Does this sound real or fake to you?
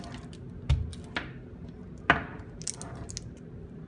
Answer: real